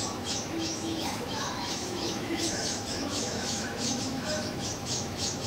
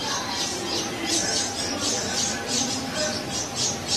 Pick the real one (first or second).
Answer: second